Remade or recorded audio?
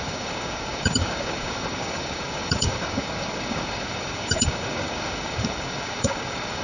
remade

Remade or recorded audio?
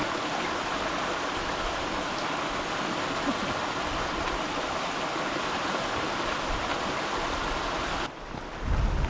recorded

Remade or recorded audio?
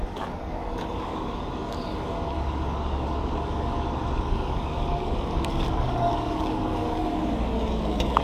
remade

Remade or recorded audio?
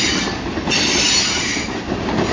recorded